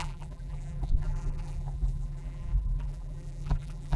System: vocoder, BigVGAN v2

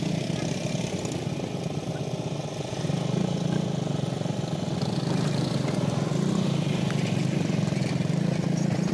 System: none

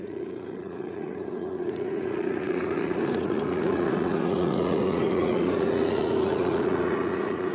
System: vocoder, Vocos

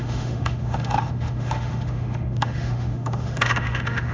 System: autoencoder, DAC-VAE